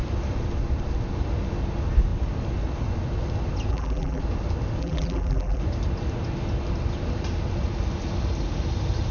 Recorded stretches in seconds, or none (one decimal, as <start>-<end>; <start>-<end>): 0.0-3.7; 4.2-4.8; 5.6-9.1